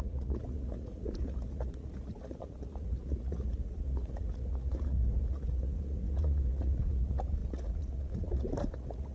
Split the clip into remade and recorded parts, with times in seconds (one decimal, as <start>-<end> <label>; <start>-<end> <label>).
0.0-9.1 remade